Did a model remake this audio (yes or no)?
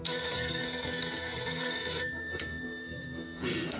yes